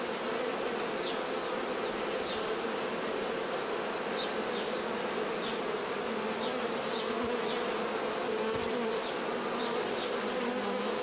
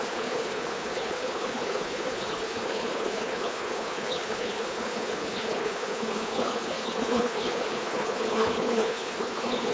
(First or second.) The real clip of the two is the first